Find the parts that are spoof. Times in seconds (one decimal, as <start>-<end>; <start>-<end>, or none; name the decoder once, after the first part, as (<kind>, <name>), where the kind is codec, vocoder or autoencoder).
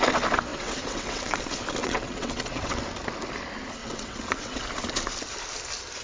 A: 0.5-1.4 (vocoder, WaveNeXt); 1.8-2.8; 3.8-4.6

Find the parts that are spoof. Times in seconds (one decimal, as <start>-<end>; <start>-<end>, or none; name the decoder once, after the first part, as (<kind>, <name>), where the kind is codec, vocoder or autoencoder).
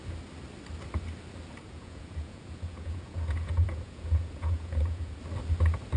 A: 1.6-5.2 (vocoder, Vocos)